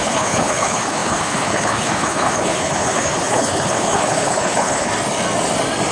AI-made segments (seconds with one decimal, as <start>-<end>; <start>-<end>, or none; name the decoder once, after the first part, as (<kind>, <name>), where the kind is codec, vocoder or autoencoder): 0.0-4.9 (codec, HILCodec)